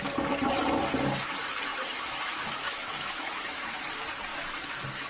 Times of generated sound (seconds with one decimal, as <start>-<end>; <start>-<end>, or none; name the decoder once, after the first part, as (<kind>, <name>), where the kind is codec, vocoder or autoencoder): 1.7-3.8 (autoencoder, DAC-VAE); 4.3-5.1